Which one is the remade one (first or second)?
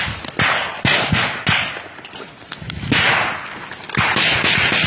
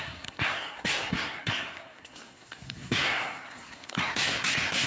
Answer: second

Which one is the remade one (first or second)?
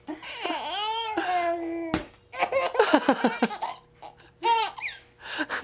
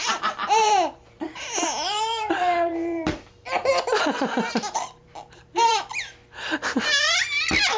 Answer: second